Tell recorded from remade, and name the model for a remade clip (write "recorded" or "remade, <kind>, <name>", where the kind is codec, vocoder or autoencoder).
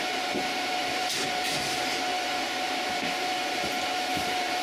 remade, vocoder, BigVGAN v2